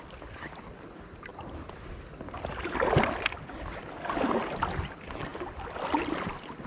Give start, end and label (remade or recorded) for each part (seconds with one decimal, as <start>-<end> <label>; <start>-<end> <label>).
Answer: 0.0-6.7 recorded